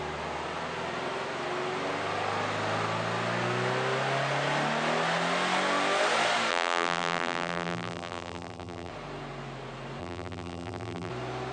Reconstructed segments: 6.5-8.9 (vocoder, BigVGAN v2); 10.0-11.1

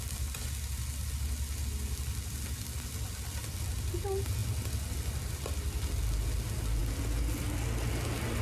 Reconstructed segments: none

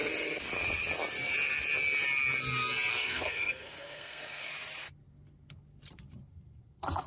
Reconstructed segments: 2.9-4.5 (codec, SNAC)

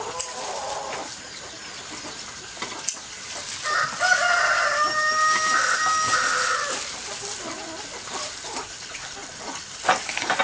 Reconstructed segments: 7.9-10.4 (vocoder, BigVGAN v2)

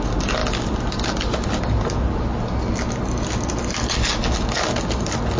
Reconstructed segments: none

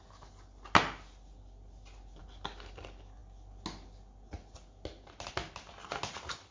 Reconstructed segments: none

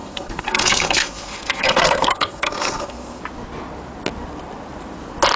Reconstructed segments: 0.0-3.2 (codec, SNAC)